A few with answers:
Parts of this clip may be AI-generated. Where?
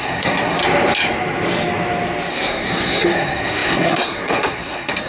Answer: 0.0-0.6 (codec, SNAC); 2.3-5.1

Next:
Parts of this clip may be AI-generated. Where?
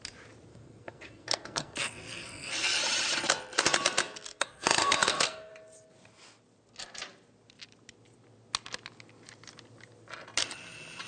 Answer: 0.5-2.8 (codec, SNAC); 4.3-5.5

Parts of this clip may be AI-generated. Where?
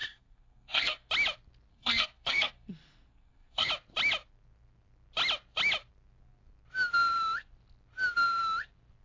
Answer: 0.0-1.1 (codec, SNAC); 1.7-3.7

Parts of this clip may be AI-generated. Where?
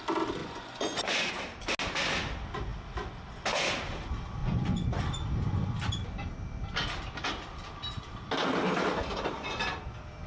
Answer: 0.4-1.3 (vocoder, Vocos); 4.4-5.0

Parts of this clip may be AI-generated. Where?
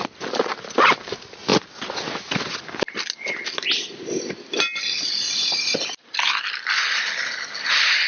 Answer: none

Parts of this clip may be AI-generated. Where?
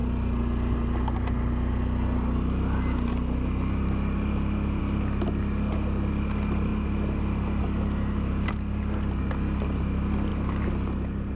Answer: none